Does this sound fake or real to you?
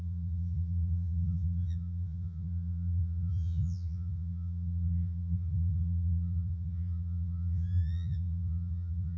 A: fake